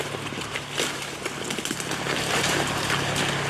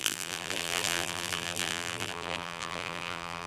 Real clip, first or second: first